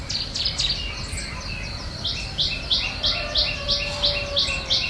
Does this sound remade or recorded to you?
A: recorded